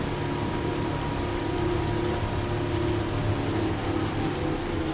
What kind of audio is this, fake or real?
real